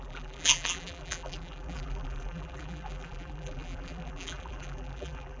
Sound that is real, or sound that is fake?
fake